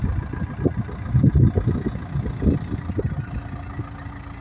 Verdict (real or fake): real